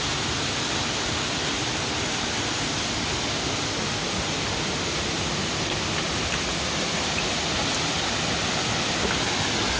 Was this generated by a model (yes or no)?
no